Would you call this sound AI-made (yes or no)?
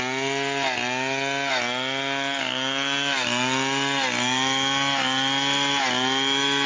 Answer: no